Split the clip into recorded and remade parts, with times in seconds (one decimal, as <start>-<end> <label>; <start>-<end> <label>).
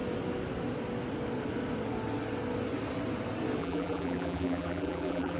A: 0.0-3.6 recorded; 3.6-5.4 remade